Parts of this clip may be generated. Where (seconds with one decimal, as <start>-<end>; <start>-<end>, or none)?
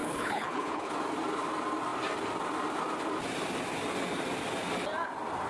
0.0-0.9